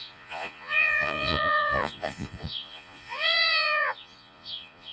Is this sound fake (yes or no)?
yes